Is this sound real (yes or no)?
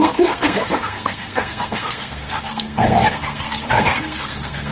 no